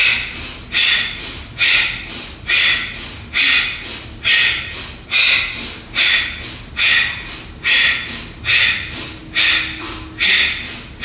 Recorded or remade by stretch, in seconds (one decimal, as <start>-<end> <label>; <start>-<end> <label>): 0.0-11.0 recorded